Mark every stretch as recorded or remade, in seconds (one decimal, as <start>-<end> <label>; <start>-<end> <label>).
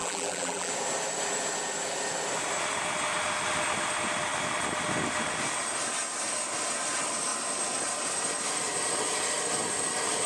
0.0-0.7 remade; 0.7-10.3 recorded